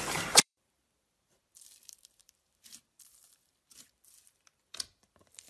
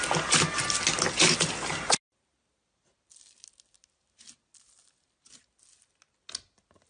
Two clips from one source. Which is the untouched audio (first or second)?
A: second